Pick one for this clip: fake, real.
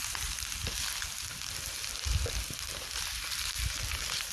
real